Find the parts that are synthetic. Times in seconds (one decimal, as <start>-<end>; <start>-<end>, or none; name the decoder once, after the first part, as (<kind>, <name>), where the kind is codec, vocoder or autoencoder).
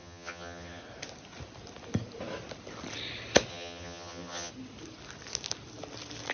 0.0-0.8 (vocoder, HiFi-GAN); 3.5-4.5